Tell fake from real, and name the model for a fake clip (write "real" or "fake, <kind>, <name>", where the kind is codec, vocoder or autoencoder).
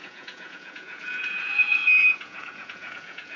fake, vocoder, Vocos